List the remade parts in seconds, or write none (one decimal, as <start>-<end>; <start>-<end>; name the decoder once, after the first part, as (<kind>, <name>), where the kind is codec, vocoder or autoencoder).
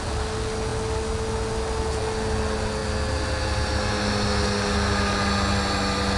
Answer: none